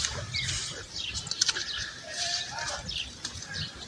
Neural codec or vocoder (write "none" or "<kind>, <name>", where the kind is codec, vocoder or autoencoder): vocoder, BigVGAN v2